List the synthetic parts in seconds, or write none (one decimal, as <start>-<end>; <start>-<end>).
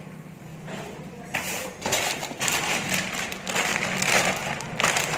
0.0-0.5; 2.8-3.7